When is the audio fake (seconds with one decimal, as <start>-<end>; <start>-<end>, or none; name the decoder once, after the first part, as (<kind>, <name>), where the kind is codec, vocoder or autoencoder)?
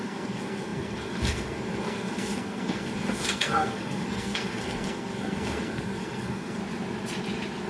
0.0-6.6 (codec, SNAC)